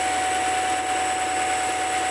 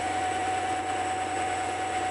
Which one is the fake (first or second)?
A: second